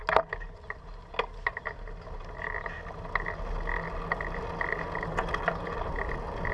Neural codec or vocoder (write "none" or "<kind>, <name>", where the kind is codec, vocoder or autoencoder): none